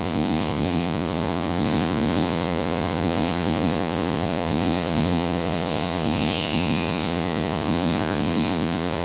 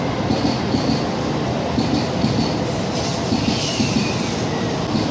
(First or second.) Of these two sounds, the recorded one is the second